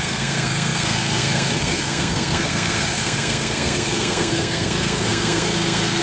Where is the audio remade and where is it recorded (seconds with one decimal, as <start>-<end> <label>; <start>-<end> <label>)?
0.0-6.0 remade